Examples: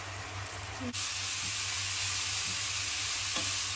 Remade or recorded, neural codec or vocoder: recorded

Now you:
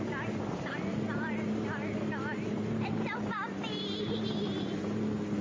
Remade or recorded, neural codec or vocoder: remade, vocoder, BigVGAN v2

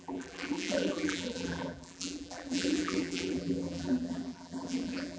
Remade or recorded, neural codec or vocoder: remade, vocoder, BigVGAN v2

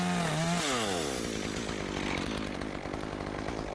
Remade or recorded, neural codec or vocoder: recorded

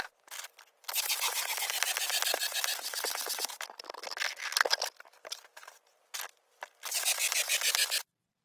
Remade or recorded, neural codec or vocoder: recorded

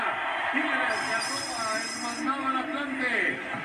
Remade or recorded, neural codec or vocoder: recorded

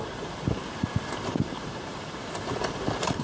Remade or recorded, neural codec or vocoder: recorded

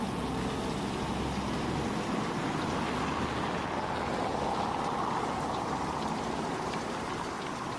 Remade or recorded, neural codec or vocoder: recorded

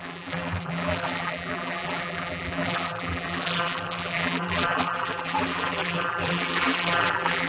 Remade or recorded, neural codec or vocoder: remade, vocoder, BigVGAN v2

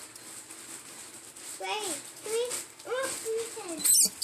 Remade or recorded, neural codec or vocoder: recorded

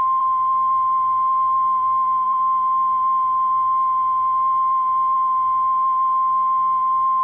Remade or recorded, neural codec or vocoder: remade, vocoder, BigVGAN v2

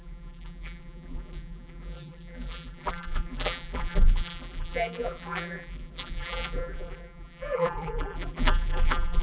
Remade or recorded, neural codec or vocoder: remade, vocoder, BigVGAN v2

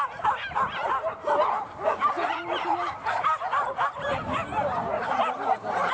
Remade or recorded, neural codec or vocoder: remade, vocoder, BigVGAN v2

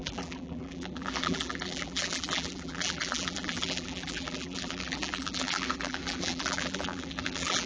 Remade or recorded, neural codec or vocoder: remade, vocoder, BigVGAN v2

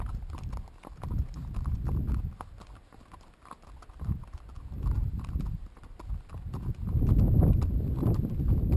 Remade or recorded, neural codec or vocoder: remade, vocoder, BigVGAN v2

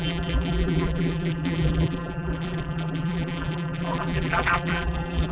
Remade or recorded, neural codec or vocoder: remade, vocoder, BigVGAN v2